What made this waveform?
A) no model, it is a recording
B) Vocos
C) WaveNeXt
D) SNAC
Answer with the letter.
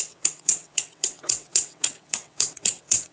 C